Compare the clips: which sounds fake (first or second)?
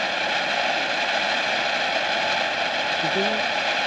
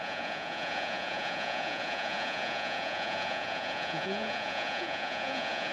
second